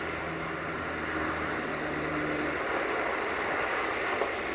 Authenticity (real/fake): real